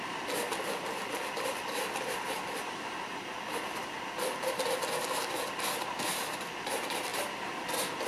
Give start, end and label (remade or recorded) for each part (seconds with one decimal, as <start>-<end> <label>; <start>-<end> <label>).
0.0-8.1 recorded